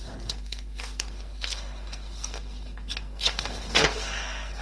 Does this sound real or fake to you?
fake